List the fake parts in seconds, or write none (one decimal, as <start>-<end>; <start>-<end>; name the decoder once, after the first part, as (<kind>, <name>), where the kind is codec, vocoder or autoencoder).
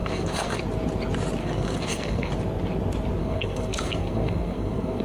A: 0.0-0.6 (codec, SNAC); 1.4-2.3; 3.2-5.0